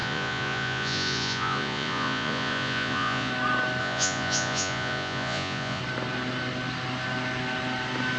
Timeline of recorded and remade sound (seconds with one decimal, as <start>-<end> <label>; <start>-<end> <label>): 0.0-3.3 remade; 3.3-3.8 recorded; 3.8-5.8 remade; 5.8-8.2 recorded